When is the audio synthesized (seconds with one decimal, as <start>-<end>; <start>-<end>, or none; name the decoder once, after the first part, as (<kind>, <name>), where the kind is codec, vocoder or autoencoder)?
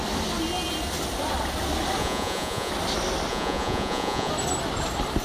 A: 2.0-2.7 (vocoder, Vocos); 3.3-4.3